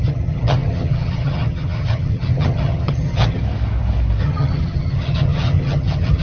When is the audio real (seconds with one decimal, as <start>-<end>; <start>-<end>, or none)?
3.4-4.2